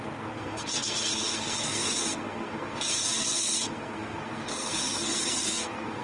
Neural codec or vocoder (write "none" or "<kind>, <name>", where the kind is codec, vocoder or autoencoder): codec, SNAC